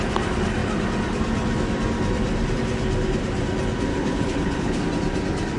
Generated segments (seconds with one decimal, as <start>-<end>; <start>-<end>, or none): 3.9-4.8